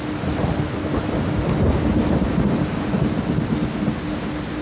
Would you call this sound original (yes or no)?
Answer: yes